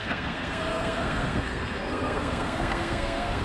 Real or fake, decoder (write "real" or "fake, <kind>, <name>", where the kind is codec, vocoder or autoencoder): fake, codec, SNAC